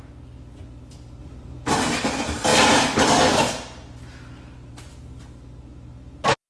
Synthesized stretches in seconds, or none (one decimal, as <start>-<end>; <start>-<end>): 1.2-1.7; 2.5-3.1